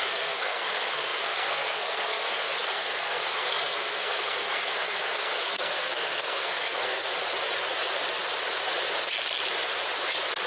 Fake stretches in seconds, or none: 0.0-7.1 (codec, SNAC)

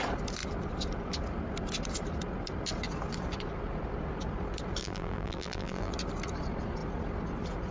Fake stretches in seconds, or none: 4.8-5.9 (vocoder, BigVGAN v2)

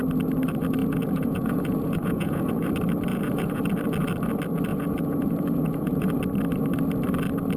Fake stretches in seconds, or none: 0.8-2.7 (vocoder, Vocos); 3.1-3.6; 4.7-6.1

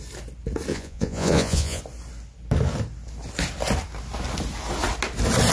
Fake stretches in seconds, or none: 0.7-1.8 (vocoder, Vocos)

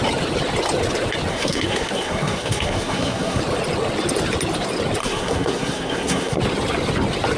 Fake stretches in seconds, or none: 1.3-3.4 (codec, SNAC); 5.0-6.4

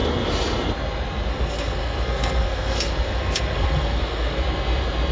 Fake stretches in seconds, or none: 1.3-4.4 (codec, SNAC)

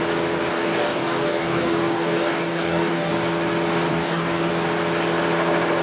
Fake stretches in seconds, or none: 0.5-3.1 (codec, DAC); 3.9-4.5

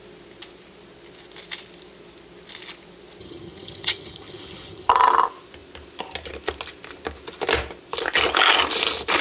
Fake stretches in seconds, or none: 3.2-4.9 (vocoder, HiFi-GAN)